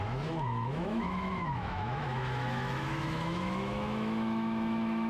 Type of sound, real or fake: fake